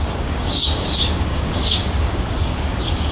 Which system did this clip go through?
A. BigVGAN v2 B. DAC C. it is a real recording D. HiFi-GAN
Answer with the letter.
B